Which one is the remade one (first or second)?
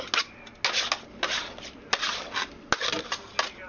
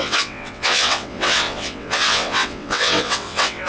second